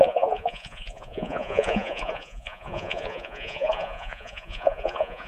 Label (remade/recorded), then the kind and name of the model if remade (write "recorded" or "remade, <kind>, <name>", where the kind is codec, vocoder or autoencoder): remade, vocoder, Vocos